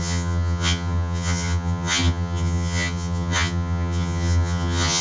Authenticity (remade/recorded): remade